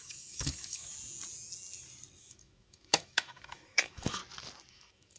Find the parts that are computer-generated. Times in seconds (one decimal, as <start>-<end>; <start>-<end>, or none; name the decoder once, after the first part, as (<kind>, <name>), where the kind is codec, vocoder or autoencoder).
0.0-0.9 (autoencoder, DAC-VAE); 2.2-4.2; 4.7-5.2